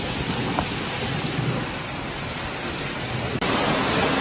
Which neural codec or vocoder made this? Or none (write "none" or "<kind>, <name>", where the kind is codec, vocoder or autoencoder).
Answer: none